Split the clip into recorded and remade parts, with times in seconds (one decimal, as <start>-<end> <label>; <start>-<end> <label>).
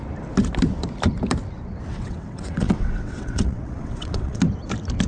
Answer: 0.0-1.9 recorded; 1.9-4.4 remade; 4.4-5.1 recorded